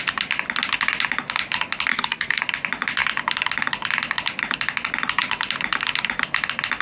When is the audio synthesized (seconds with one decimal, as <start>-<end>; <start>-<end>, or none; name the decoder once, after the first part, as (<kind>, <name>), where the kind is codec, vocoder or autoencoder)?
1.9-2.4 (codec, SNAC)